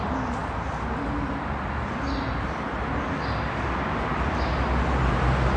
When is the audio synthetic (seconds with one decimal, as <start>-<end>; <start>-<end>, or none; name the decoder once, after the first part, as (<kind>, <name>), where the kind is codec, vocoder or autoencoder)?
none